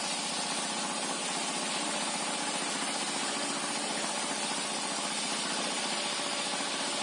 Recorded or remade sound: recorded